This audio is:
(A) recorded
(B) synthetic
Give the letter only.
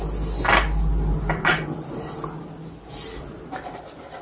A